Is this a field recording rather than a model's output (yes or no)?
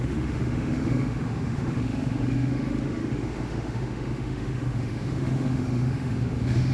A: no